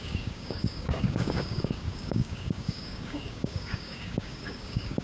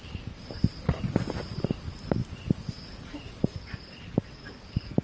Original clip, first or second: second